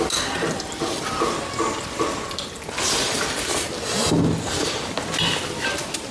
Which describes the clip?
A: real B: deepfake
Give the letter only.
A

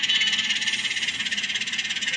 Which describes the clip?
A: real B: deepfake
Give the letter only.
A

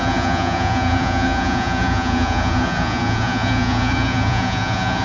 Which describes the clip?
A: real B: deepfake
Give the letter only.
B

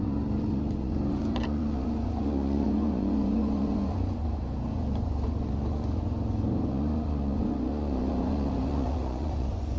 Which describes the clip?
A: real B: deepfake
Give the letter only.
B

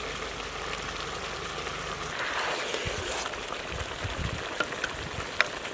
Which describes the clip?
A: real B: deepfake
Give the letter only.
A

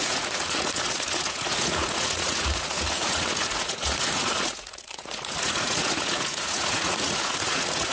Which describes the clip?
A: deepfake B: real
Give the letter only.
A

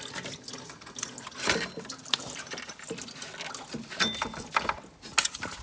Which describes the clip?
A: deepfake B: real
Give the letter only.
B